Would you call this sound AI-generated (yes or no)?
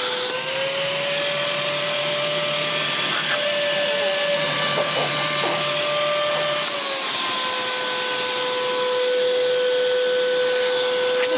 no